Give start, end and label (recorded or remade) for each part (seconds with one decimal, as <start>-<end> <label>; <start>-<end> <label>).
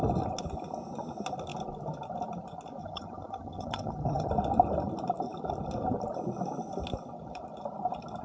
0.0-2.8 recorded; 2.8-4.3 remade; 4.3-8.2 recorded